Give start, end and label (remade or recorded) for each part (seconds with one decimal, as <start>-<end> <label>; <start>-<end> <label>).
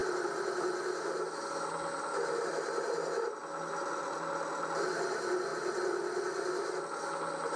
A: 0.0-0.6 remade; 0.6-7.6 recorded